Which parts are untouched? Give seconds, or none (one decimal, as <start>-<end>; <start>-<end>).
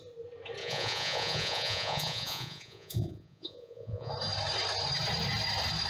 0.0-0.6; 4.1-5.9